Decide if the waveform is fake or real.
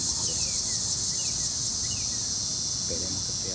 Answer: real